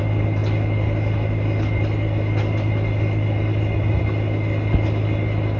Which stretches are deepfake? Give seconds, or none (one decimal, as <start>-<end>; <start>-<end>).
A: none